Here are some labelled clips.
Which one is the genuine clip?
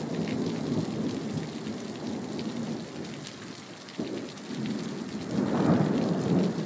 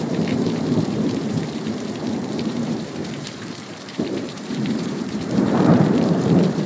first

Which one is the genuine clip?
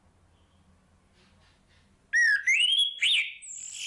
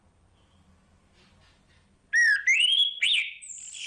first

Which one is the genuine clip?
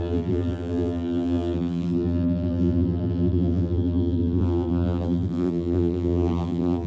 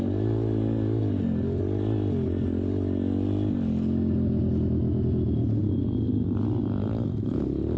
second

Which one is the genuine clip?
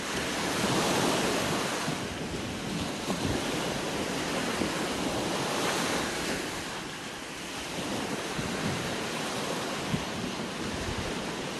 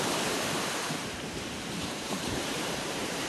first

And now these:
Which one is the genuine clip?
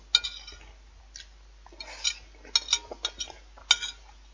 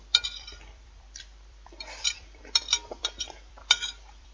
first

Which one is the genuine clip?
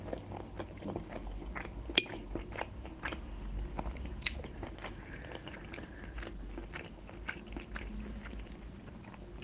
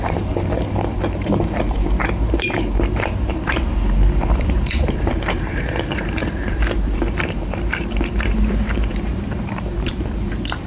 first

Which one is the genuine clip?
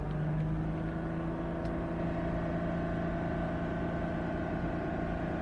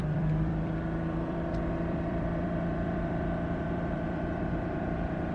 first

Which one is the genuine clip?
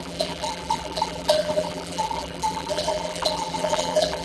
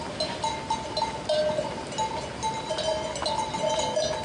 second